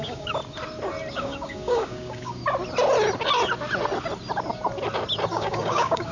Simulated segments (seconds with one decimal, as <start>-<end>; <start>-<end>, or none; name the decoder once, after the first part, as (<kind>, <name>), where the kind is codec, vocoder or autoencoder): 0.0-0.4 (codec, DAC); 1.1-2.4; 5.3-6.1